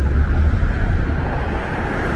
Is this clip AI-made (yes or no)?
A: no